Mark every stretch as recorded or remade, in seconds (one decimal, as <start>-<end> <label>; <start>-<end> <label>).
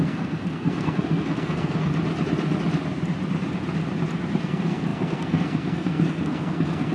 0.0-1.9 remade; 1.9-4.4 recorded; 4.4-6.9 remade